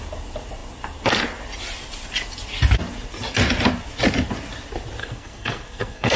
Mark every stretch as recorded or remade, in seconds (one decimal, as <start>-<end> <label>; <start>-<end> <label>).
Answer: 0.0-5.0 recorded; 5.0-6.2 remade